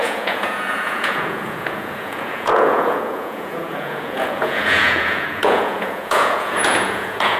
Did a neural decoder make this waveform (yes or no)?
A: yes